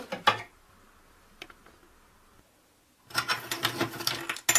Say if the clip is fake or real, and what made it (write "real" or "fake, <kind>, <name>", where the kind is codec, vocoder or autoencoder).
real